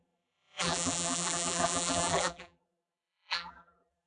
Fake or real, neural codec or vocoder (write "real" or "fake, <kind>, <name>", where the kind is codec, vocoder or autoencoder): fake, vocoder, BigVGAN v2